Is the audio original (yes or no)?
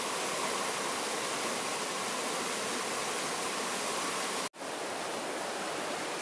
yes